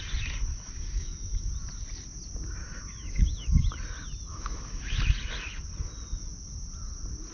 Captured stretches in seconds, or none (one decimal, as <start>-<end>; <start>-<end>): 0.0-0.5; 1.5-2.6; 3.7-4.3; 5.0-7.3

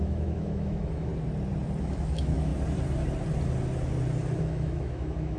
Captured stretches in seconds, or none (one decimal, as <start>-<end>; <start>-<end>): 1.1-1.8; 2.5-4.4

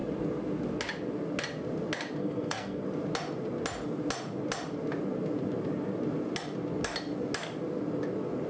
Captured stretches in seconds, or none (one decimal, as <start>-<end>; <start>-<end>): 0.0-2.2; 2.8-8.5

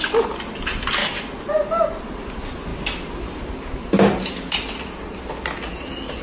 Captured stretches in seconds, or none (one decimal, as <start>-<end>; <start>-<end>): 0.0-6.2

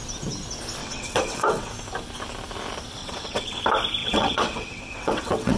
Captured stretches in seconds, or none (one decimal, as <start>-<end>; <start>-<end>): 0.0-0.8; 1.7-3.0; 3.6-4.0